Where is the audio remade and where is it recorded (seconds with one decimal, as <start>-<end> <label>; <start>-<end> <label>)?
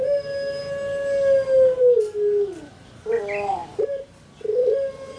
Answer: 0.0-3.6 recorded; 3.6-4.4 remade; 4.4-5.2 recorded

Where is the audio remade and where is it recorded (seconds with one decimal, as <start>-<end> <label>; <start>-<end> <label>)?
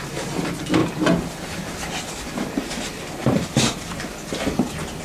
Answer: 0.0-0.8 recorded; 0.8-1.8 remade; 1.8-3.2 recorded; 3.2-4.0 remade; 4.0-5.0 recorded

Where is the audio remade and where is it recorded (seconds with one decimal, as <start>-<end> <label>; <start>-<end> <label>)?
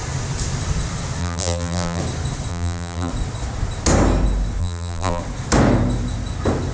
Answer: 0.0-1.2 recorded; 1.2-2.0 remade; 2.0-2.5 recorded; 2.5-3.1 remade; 3.1-4.6 recorded; 4.6-5.2 remade; 5.2-6.7 recorded